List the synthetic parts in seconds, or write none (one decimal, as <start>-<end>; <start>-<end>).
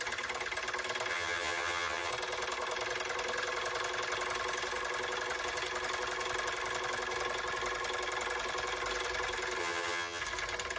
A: 1.1-2.1; 9.6-10.2